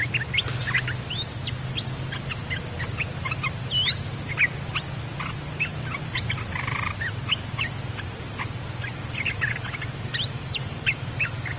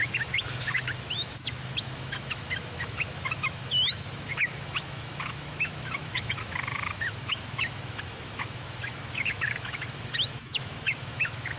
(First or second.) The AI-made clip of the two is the second